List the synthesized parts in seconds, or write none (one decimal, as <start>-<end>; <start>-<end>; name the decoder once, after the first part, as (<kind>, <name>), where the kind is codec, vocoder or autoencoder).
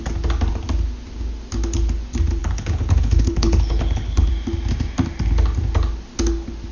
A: 2.4-4.3 (codec, HILCodec)